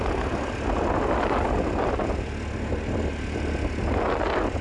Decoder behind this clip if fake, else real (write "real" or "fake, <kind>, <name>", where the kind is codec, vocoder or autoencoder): real